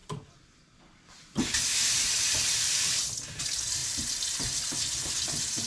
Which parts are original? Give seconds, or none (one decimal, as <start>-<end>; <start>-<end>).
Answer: 3.4-3.8